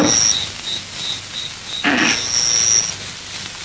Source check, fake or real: real